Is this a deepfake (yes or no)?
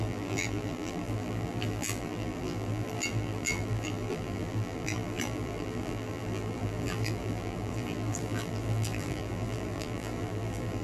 yes